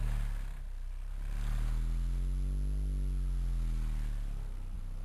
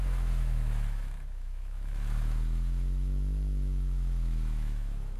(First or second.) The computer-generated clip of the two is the second